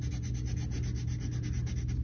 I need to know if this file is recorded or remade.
recorded